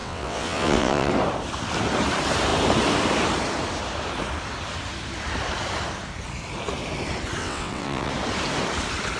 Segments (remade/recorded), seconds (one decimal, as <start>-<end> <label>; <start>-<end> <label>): 0.0-1.1 remade; 1.1-7.4 recorded; 7.4-8.1 remade; 8.1-9.2 recorded